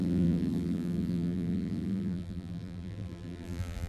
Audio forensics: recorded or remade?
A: remade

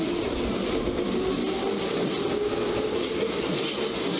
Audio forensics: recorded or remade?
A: recorded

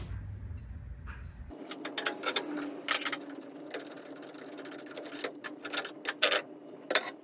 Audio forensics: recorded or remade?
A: recorded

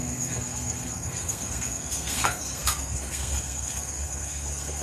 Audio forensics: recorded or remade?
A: remade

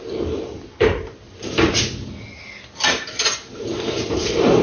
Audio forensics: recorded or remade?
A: recorded